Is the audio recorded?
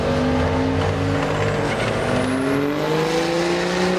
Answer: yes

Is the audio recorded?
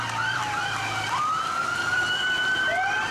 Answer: no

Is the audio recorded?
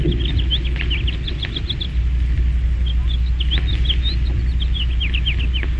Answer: yes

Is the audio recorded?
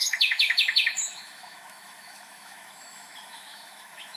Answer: no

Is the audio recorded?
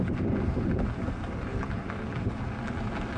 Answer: yes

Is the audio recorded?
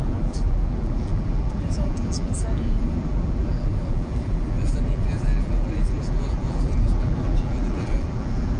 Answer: no